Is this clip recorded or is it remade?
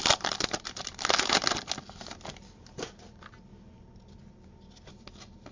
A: recorded